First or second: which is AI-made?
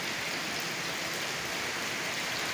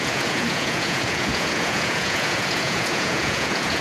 second